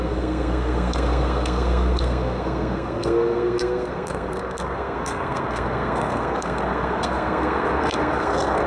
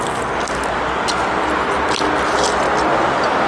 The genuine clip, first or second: second